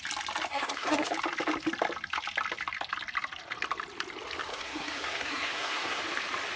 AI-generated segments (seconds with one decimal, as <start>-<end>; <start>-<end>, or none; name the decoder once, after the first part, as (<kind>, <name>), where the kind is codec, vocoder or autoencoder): 0.5-1.1 (codec, SNAC); 4.5-6.0